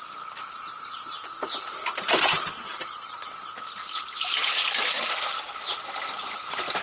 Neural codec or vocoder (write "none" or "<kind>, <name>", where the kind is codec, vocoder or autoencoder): none